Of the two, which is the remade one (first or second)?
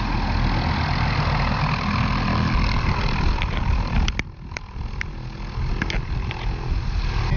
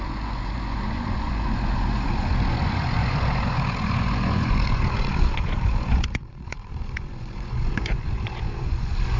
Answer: second